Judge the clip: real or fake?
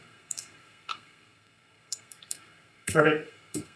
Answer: fake